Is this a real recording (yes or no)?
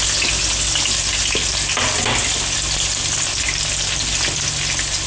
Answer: yes